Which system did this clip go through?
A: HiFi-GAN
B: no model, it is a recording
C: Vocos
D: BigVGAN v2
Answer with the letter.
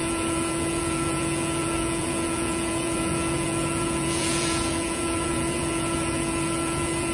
C